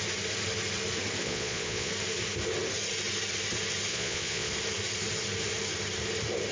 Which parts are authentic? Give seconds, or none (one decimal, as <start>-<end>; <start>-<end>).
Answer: 0.0-1.2; 1.9-3.9; 4.5-6.5

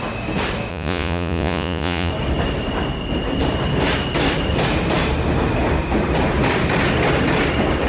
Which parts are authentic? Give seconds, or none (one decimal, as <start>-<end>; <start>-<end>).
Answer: 0.0-0.7; 2.1-7.9